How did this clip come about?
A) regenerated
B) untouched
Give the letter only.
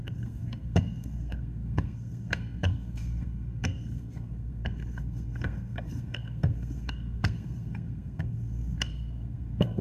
A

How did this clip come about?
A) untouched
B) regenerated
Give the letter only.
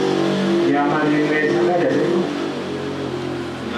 A